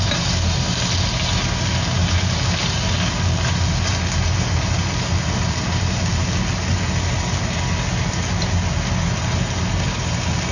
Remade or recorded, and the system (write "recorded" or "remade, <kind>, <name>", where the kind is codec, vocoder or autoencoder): recorded